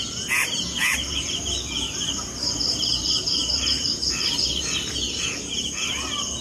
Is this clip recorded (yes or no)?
no